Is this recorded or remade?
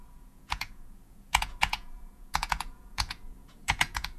remade